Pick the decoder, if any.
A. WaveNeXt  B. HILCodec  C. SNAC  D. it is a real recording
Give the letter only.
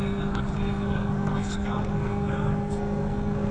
C